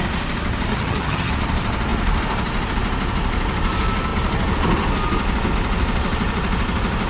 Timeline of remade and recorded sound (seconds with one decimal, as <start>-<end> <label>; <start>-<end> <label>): 0.0-0.7 recorded; 0.7-1.3 remade; 1.3-7.1 recorded